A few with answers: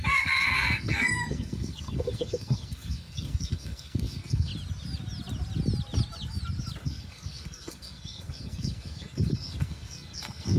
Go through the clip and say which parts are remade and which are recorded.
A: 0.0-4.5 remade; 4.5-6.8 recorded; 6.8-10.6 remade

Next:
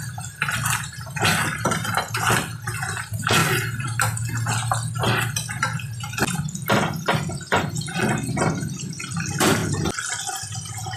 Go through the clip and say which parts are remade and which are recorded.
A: 0.0-11.0 recorded

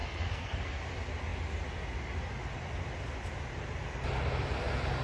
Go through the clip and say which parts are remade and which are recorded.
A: 0.0-0.8 remade; 0.8-5.0 recorded

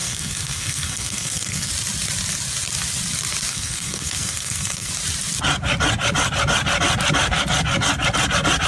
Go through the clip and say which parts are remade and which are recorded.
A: 0.0-1.7 remade; 1.7-3.5 recorded; 3.5-4.9 remade; 4.9-8.7 recorded

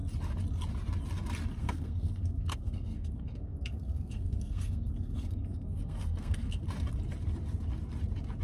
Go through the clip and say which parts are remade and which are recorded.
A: 0.0-1.6 recorded; 1.6-6.6 remade; 6.6-8.4 recorded

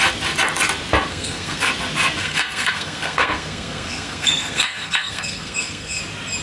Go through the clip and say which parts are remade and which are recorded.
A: 0.0-1.1 recorded; 1.1-1.7 remade; 1.7-2.2 recorded; 2.2-6.0 remade; 6.0-6.4 recorded